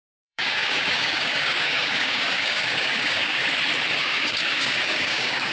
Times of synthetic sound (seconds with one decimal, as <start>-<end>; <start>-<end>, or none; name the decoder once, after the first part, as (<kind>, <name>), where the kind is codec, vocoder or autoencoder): 0.0-3.4 (codec, DAC); 4.0-5.5